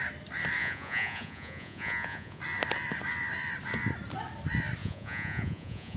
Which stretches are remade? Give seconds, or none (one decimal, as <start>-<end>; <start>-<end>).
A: 0.6-2.4; 4.8-6.0